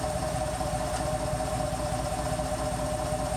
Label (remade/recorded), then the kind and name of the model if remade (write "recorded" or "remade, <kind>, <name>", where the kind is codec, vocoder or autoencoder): recorded